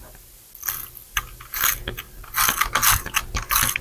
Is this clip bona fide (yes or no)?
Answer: yes